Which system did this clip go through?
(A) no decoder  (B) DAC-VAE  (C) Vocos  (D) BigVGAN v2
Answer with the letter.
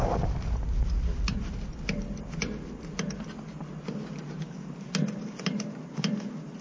A